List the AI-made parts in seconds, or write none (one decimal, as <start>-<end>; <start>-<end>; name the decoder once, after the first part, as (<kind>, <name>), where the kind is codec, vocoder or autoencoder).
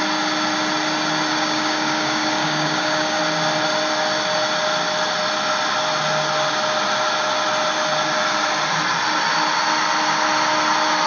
1.3-3.2 (codec, DAC)